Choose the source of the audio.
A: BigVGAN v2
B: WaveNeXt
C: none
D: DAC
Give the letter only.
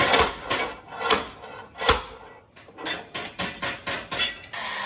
C